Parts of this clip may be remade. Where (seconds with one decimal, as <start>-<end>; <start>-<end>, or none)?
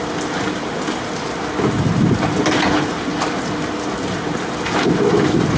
none